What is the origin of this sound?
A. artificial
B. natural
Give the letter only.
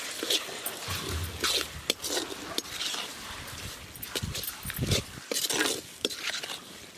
B